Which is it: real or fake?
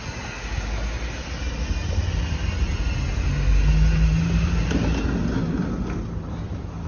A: real